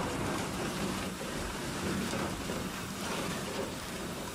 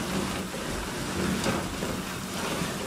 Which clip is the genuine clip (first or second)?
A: second